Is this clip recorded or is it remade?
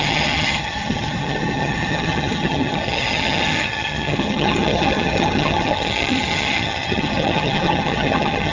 remade